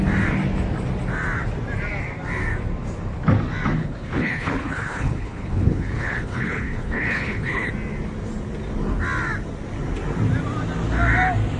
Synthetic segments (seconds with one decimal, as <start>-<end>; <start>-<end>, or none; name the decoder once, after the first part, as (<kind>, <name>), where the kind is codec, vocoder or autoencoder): 3.8-7.7 (codec, HILCodec)